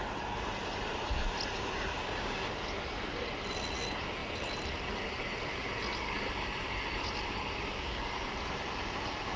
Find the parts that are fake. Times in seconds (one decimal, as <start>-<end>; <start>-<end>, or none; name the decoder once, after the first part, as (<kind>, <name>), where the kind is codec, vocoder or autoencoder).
2.0-2.6 (codec, DAC); 7.7-8.3